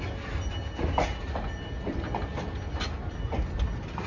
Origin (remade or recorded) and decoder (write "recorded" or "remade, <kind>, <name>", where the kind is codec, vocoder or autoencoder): recorded